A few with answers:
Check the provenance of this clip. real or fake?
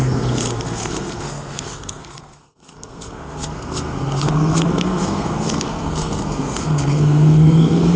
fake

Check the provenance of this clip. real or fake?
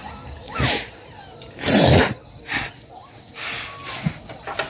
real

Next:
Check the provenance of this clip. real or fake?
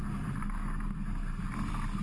real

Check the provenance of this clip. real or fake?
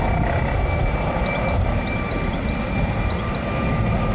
real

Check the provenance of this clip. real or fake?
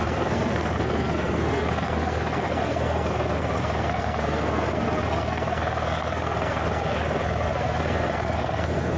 fake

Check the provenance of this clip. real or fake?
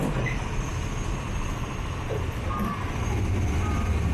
real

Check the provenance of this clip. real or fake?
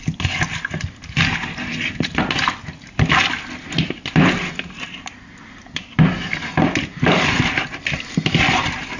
real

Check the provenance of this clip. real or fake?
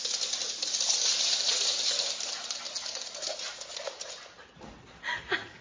real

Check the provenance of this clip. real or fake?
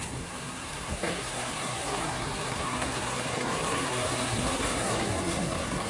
fake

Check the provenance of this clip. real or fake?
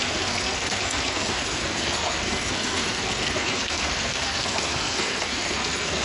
fake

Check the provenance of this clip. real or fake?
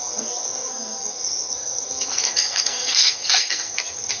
fake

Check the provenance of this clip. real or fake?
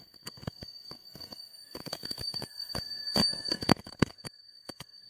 fake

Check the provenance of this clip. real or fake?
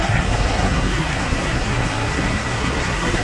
fake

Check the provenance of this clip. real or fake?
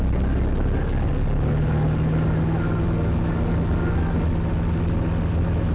real